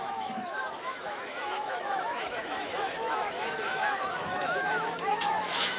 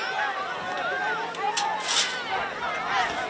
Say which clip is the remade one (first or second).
first